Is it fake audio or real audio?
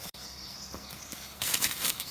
fake